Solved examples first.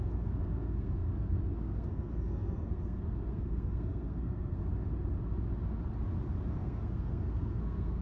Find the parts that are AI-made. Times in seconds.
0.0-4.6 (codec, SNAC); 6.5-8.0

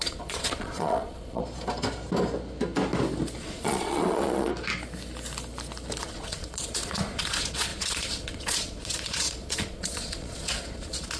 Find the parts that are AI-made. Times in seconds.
0.0-1.4 (vocoder, Vocos); 3.4-4.5; 6.0-11.2

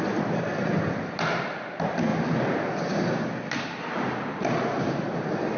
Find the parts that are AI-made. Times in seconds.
none

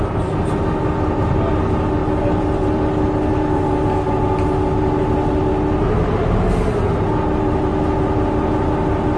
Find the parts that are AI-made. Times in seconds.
none